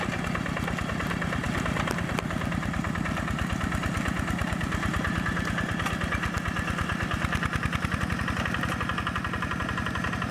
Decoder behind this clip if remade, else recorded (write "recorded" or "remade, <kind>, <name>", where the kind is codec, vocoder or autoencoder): recorded